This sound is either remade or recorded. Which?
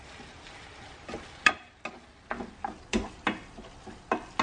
recorded